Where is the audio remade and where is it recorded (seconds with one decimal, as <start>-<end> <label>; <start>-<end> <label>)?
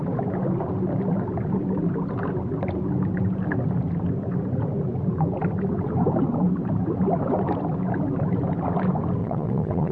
0.0-9.2 recorded; 9.2-9.9 remade